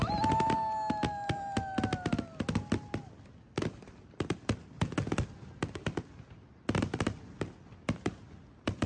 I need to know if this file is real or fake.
real